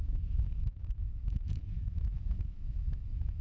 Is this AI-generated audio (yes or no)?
yes